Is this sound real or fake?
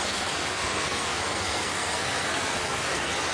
fake